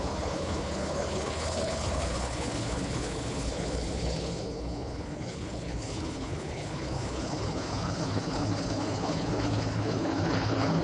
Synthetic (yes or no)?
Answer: yes